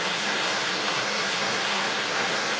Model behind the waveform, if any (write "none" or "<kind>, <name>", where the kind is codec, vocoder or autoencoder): codec, SNAC